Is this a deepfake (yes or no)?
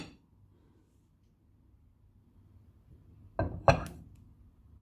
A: no